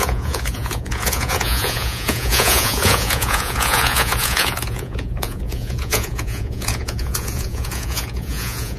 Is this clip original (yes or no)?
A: no